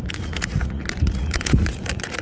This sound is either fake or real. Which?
fake